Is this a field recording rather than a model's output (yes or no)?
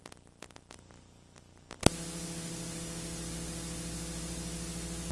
yes